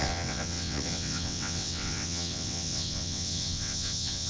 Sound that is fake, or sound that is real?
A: fake